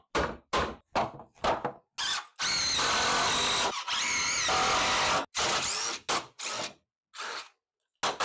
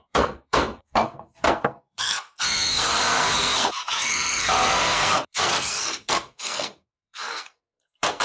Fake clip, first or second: second